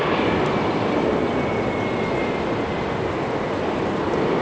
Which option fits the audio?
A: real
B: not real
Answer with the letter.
A